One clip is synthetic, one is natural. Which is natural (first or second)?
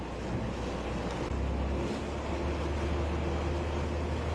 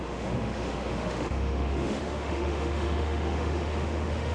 first